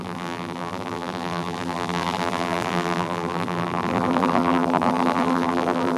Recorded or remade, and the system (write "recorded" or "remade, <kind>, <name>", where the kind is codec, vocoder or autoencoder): remade, vocoder, BigVGAN v2